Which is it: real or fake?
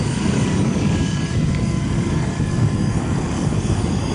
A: fake